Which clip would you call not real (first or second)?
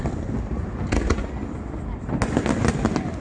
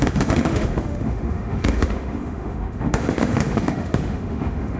second